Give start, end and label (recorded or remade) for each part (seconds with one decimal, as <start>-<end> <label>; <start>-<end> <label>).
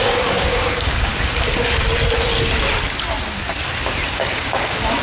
0.0-1.1 remade; 1.1-4.1 recorded; 4.1-5.0 remade